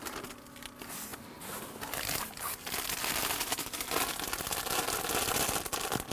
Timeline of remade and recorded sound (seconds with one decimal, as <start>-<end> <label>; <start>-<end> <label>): 0.0-6.1 recorded